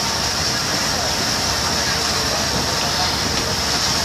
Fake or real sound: fake